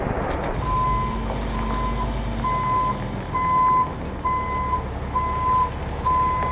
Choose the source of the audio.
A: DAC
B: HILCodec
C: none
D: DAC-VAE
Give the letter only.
C